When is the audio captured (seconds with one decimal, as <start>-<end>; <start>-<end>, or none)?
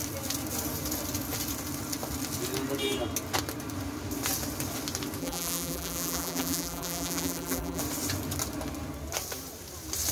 0.0-5.2; 7.8-10.1